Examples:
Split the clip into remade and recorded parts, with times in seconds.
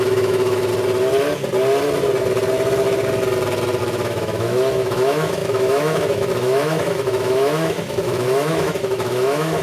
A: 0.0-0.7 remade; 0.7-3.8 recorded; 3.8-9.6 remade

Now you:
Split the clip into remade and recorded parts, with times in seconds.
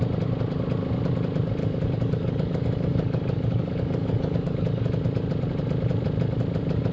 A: 0.0-1.6 recorded; 1.6-4.9 remade; 4.9-6.9 recorded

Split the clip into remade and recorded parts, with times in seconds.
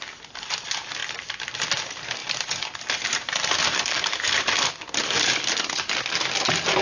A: 0.0-1.0 recorded; 1.0-1.6 remade; 1.6-2.2 recorded; 2.2-5.5 remade; 5.5-6.8 recorded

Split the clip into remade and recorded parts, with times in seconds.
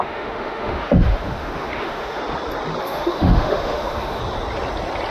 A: 0.0-2.2 remade; 2.2-2.8 recorded; 2.8-4.2 remade; 4.2-5.1 recorded